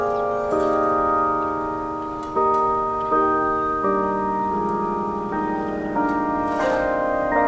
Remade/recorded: recorded